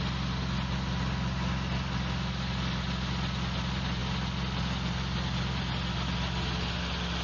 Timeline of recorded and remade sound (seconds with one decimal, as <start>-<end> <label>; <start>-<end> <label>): 0.0-7.2 recorded